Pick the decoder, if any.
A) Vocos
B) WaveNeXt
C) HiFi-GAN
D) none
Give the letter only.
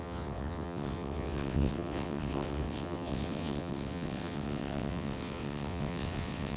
B